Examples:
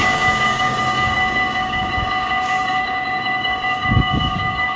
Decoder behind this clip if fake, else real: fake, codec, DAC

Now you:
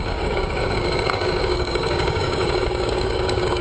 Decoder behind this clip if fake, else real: fake, codec, DAC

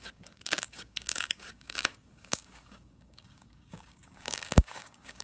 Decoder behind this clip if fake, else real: fake, codec, DAC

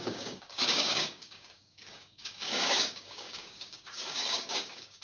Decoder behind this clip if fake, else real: fake, codec, DAC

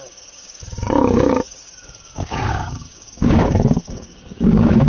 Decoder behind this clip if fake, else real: fake, codec, DAC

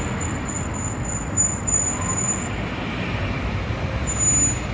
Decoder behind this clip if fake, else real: real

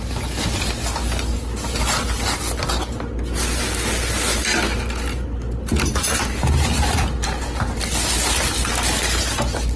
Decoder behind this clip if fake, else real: real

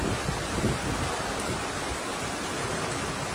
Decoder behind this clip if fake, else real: real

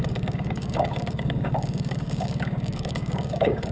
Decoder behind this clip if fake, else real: fake, codec, DAC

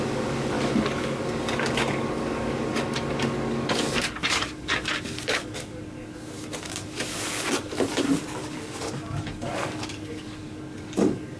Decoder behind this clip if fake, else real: fake, codec, DAC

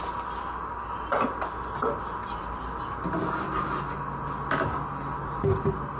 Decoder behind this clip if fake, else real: real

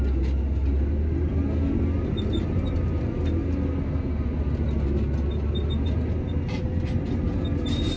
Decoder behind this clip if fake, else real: real